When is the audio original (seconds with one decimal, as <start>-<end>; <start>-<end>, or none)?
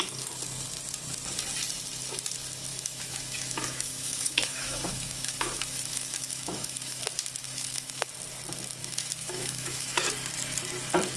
0.0-2.7; 7.0-7.4; 8.1-8.8; 10.0-11.2